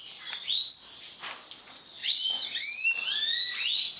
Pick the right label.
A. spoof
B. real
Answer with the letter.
B